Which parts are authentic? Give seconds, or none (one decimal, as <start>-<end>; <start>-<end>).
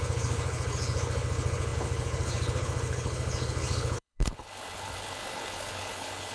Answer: none